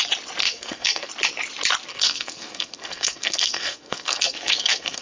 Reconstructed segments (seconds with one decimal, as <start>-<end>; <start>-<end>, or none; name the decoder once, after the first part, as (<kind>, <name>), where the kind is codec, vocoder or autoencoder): 0.4-1.1 (codec, SNAC); 1.9-5.0